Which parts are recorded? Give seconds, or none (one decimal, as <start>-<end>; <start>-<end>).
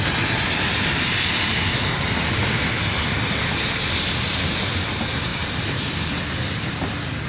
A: 0.0-7.3